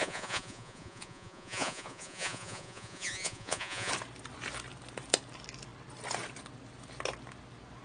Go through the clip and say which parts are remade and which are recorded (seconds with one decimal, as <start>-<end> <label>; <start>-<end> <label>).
0.0-3.9 remade; 3.9-7.8 recorded